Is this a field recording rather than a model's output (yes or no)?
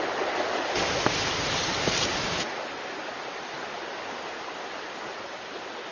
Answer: yes